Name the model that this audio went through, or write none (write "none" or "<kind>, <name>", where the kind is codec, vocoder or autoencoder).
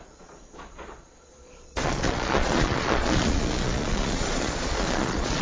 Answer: vocoder, Vocos